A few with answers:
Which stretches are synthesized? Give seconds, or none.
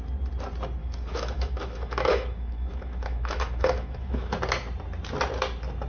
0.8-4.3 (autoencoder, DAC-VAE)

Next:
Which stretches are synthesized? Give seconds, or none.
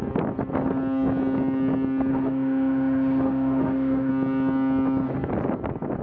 2.1-4.1 (autoencoder, DAC-VAE)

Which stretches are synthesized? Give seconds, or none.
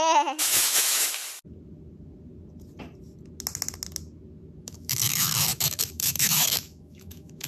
0.0-1.2 (autoencoder, DAC-VAE); 4.6-7.5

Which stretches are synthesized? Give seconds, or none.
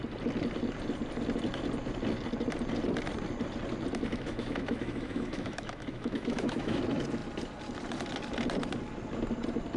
4.1-6.8 (autoencoder, DAC-VAE)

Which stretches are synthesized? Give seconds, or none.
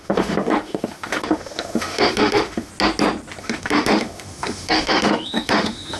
0.0-2.7 (autoencoder, DAC-VAE); 3.4-6.0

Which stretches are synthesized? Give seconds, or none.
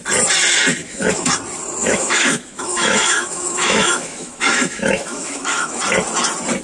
0.8-1.3 (autoencoder, DAC-VAE); 1.8-5.8